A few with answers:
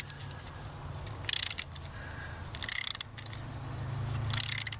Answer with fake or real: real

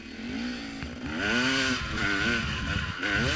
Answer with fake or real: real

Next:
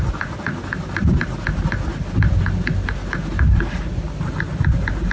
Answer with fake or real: real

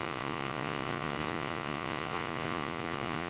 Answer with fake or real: fake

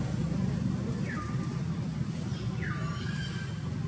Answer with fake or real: real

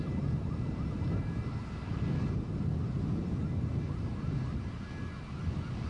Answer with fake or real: real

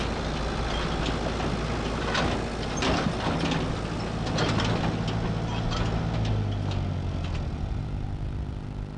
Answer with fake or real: real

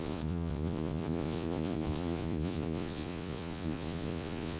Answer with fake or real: fake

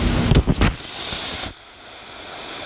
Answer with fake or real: real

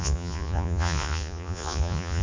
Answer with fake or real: fake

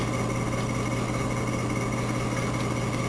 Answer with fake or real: real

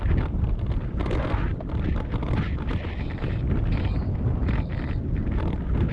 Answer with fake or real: real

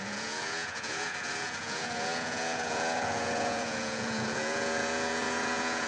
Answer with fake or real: fake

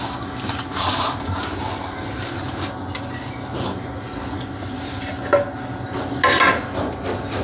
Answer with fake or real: real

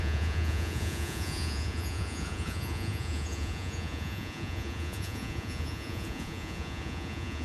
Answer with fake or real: fake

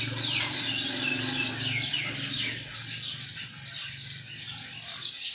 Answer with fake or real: real